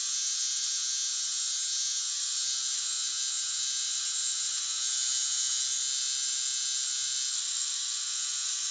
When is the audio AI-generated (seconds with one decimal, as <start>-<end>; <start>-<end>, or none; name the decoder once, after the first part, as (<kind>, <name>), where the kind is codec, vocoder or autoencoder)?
none